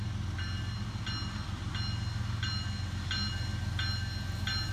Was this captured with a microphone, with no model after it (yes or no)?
yes